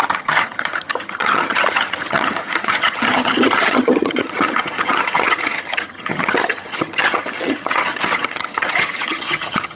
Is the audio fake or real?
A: fake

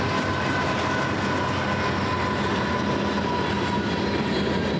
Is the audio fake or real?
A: real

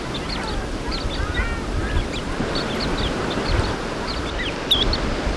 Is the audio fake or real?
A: real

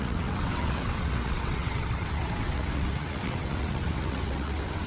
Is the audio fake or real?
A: fake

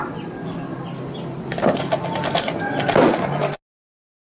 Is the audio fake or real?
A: real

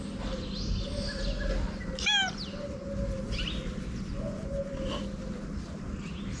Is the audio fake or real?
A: real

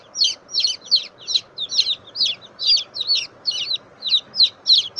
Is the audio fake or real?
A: real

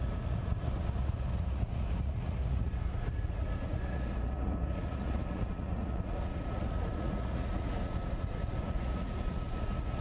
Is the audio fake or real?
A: fake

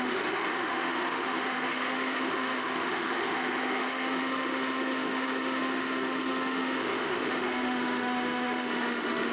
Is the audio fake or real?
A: fake